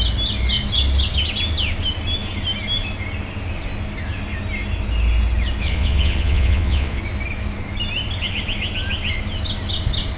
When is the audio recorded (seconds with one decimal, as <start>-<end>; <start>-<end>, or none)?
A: 0.0-5.6; 7.0-10.2